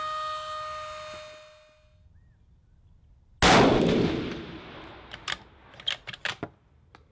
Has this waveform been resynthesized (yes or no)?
no